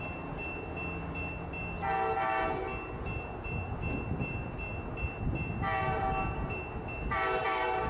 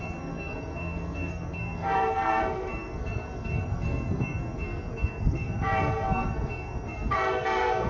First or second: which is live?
first